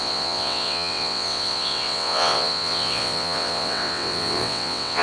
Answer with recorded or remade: remade